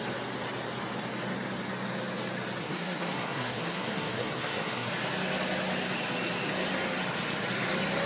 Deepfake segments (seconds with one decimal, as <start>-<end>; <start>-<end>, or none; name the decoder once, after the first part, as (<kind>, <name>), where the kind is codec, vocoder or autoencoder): 2.6-4.9 (codec, SNAC)